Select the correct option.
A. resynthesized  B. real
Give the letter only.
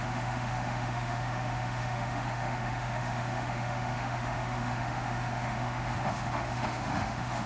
A